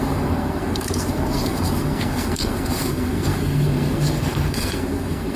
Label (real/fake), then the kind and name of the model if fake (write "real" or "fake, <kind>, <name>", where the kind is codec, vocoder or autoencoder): fake, codec, SNAC